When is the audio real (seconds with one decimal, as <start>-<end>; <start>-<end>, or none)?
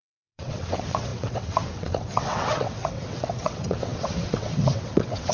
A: none